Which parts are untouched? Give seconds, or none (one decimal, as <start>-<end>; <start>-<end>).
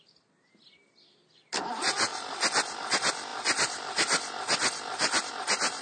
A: 0.0-2.1; 2.9-3.3; 5.3-5.8